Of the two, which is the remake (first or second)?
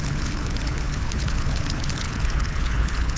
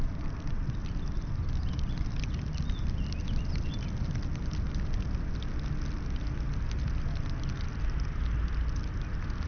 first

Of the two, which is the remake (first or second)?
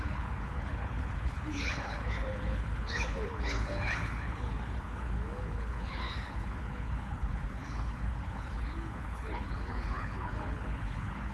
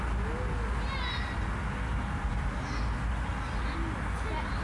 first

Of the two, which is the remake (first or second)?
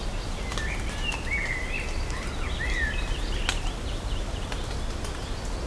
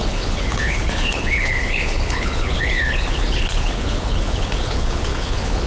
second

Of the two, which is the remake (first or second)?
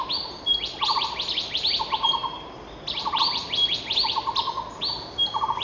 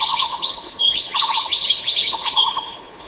second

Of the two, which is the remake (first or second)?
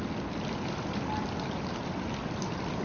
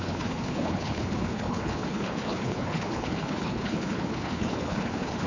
second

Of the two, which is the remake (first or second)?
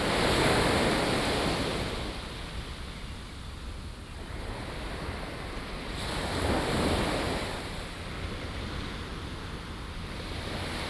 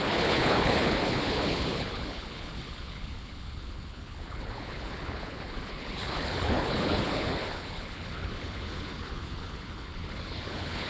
second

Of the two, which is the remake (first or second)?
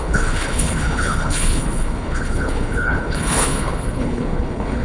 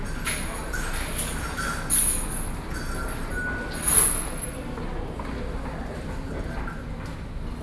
first